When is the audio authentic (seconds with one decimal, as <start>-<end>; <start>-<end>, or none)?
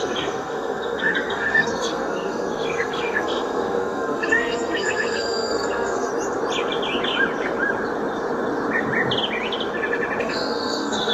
6.1-10.2